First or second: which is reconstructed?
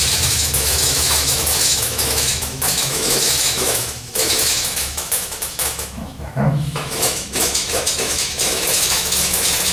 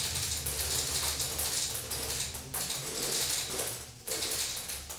first